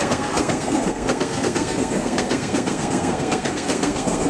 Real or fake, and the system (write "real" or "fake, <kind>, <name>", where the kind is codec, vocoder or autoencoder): fake, codec, SNAC